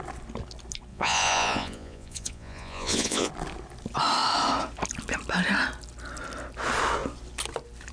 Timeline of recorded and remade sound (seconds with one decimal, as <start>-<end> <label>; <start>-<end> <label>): 0.0-0.9 recorded; 0.9-3.3 remade; 3.3-7.9 recorded